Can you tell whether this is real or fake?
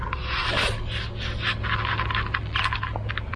real